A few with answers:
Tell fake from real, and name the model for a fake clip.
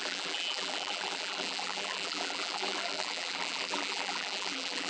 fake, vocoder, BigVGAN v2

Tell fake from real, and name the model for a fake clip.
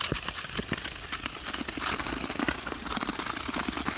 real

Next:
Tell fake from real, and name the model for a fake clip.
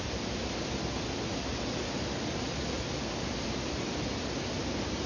real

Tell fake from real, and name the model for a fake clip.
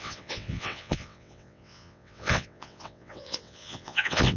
fake, vocoder, WaveNeXt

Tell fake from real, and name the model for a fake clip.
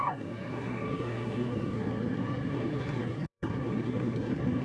fake, codec, SNAC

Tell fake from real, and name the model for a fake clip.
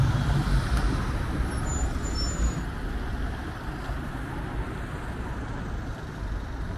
real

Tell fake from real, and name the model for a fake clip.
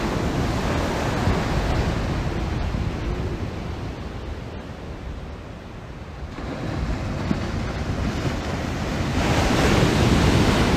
real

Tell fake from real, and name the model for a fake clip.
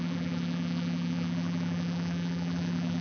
fake, vocoder, BigVGAN v2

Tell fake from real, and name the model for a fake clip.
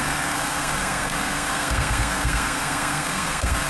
fake, codec, SNAC